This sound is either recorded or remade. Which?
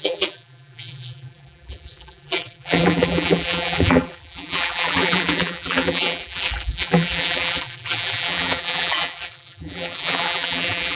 remade